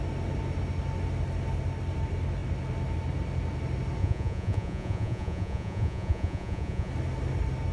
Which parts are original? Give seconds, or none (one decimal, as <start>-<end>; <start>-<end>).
0.0-4.0; 6.9-7.7

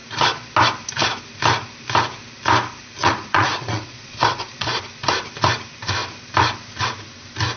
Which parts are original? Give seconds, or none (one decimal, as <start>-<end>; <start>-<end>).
0.0-3.0; 4.8-7.6

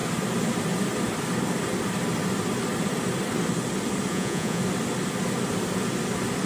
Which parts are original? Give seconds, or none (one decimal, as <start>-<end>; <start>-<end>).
0.0-4.1; 4.6-6.5

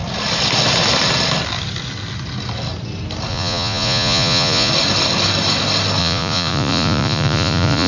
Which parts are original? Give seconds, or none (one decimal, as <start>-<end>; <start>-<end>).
0.0-3.3; 4.7-6.0